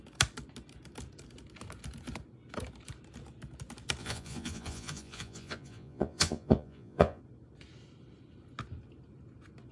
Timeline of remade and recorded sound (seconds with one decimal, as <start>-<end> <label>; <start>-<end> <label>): 0.0-4.0 recorded; 4.0-7.2 remade; 7.2-9.7 recorded